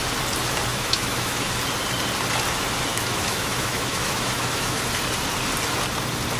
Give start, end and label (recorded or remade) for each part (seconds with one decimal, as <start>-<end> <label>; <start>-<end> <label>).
0.0-0.7 recorded; 0.7-1.5 remade; 1.5-2.9 recorded; 2.9-4.8 remade; 4.8-6.4 recorded